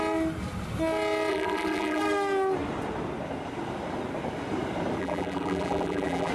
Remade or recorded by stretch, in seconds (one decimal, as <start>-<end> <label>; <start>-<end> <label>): 0.0-1.3 recorded; 1.3-2.0 remade; 2.0-5.0 recorded; 5.0-6.3 remade